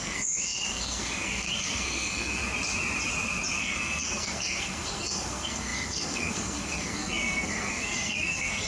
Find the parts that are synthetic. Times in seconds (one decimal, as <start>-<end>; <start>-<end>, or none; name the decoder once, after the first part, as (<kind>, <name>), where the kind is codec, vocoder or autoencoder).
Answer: 0.0-2.4 (codec, SNAC); 3.6-8.7